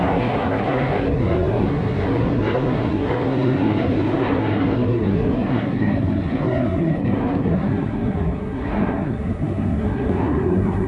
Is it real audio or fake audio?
fake